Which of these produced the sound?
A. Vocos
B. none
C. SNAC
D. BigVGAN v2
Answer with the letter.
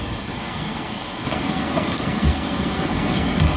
C